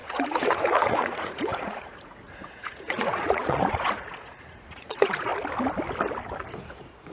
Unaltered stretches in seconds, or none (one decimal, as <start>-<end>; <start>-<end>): 5.3-6.5